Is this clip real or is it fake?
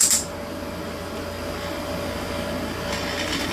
real